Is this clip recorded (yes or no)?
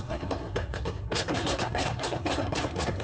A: no